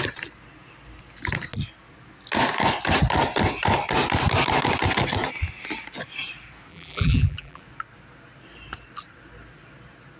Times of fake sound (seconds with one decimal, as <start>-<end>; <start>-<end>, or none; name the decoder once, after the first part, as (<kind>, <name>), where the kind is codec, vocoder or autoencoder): 6.7-7.6 (vocoder, BigVGAN v2)